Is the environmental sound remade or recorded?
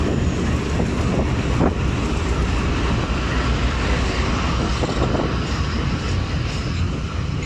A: recorded